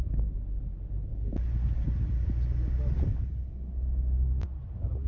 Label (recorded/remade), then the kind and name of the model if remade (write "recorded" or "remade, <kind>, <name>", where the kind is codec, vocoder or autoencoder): recorded